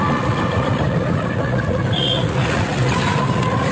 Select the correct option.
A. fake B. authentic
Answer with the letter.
A